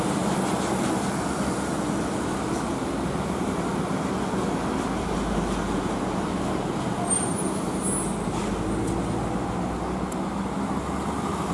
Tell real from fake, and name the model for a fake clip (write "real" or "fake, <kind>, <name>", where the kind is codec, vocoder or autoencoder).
real